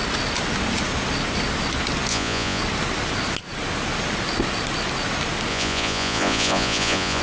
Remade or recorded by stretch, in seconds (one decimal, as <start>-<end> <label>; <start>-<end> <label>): 0.0-2.1 recorded; 2.1-2.6 remade; 2.6-5.5 recorded; 5.5-7.2 remade